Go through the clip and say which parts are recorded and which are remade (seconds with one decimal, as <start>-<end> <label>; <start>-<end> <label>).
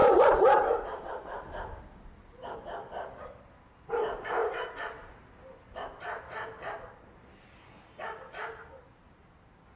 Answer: 0.0-1.8 remade; 1.8-4.4 recorded; 4.4-5.1 remade; 5.1-9.8 recorded